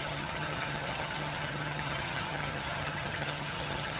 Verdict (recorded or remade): remade